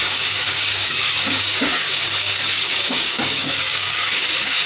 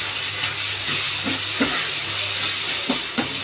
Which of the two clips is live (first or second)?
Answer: second